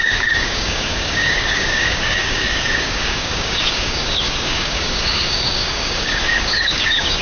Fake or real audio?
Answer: fake